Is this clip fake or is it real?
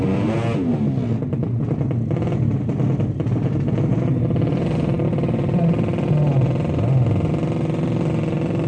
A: real